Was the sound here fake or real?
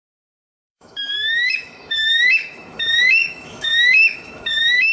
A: fake